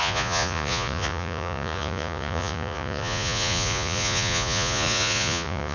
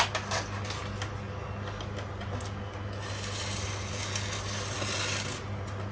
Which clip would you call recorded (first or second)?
second